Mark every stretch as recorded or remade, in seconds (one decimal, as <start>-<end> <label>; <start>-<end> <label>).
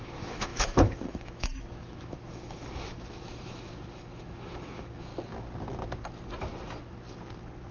0.0-5.1 remade; 5.1-7.7 recorded